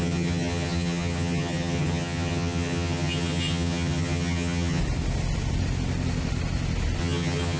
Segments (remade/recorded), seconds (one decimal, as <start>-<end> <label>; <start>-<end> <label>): 0.0-4.8 remade; 4.8-7.0 recorded; 7.0-7.6 remade